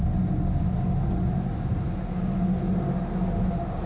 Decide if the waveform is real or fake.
real